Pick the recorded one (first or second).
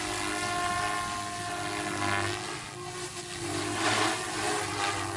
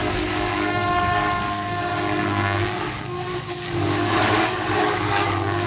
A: first